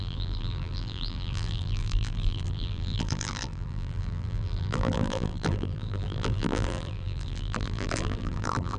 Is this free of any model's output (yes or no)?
no